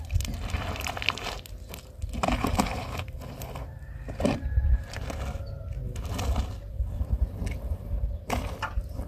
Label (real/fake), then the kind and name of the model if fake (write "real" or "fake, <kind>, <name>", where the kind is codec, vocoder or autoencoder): real